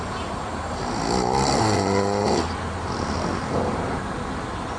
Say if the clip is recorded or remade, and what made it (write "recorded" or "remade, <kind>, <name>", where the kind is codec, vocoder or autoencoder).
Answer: recorded